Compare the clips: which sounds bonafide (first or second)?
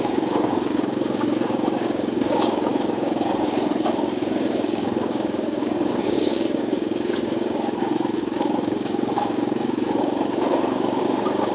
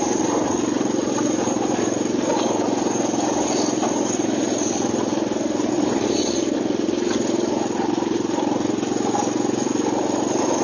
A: second